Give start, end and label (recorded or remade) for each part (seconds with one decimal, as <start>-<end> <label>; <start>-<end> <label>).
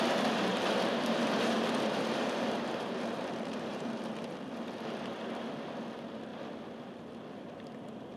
0.0-0.5 recorded; 0.5-4.0 remade; 4.0-8.2 recorded